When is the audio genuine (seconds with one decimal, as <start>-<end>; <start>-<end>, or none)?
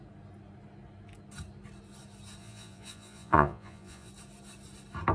0.0-2.4; 4.1-5.1